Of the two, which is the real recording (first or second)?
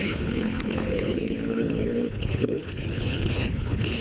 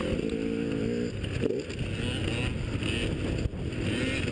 second